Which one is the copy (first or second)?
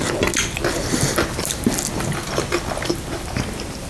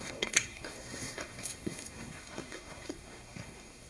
second